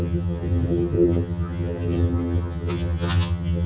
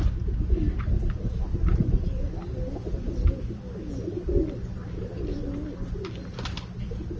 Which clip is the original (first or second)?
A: second